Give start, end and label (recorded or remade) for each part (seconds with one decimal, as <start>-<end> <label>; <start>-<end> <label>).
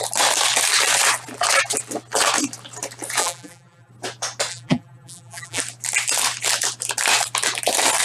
0.0-3.2 recorded; 3.2-3.9 remade; 3.9-4.5 recorded; 4.5-5.6 remade; 5.6-8.0 recorded